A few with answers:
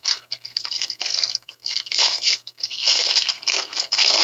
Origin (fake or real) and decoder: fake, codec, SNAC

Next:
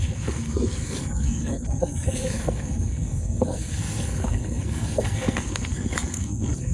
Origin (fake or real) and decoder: fake, codec, SNAC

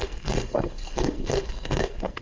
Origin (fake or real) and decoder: fake, codec, SNAC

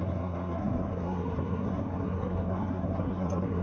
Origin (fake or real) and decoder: fake, codec, SNAC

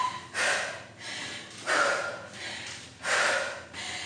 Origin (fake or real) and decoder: real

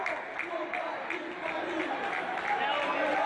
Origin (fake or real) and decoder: real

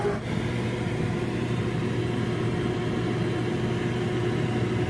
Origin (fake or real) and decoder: real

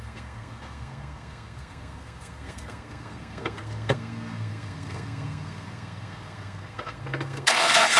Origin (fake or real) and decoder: fake, codec, SNAC